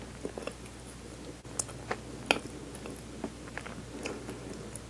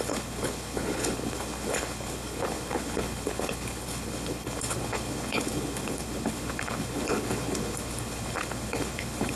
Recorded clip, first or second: first